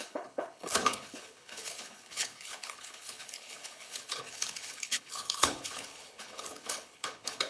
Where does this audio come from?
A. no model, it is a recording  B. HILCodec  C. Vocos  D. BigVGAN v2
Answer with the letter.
B